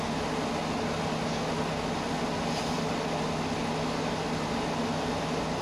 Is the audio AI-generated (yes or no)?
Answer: no